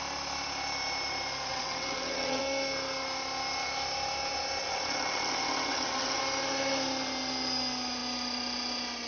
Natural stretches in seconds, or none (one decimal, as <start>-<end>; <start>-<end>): 0.0-1.5; 2.4-4.6; 6.2-9.1